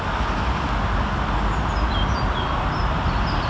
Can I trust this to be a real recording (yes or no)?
yes